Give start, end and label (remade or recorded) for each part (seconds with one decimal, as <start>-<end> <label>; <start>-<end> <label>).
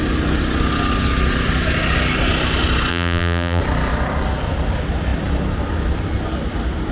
0.0-2.9 recorded; 2.9-3.6 remade; 3.6-6.9 recorded